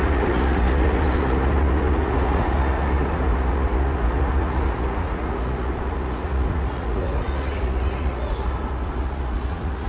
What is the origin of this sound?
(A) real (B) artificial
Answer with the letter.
B